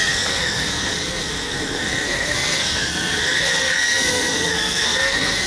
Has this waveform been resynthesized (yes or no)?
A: yes